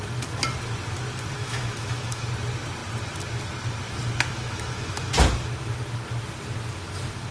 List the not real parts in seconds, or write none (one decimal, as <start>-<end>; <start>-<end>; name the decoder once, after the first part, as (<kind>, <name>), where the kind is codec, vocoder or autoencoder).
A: 1.4-2.3 (autoencoder, DAC-VAE); 4.3-5.1